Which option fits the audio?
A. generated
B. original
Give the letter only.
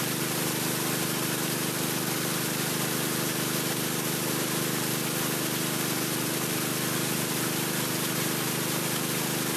B